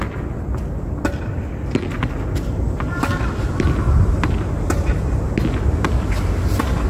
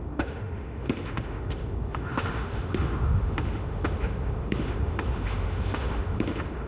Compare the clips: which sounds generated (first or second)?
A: second